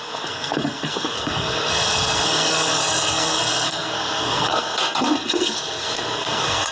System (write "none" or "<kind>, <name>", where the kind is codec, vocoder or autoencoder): codec, SNAC